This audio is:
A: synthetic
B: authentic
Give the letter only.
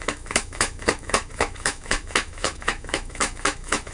A